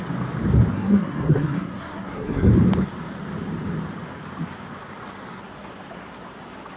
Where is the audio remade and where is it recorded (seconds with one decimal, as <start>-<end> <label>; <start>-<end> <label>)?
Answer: 0.0-0.7 recorded; 0.7-2.5 remade; 2.5-6.8 recorded